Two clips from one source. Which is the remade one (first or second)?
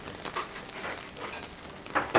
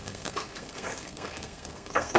second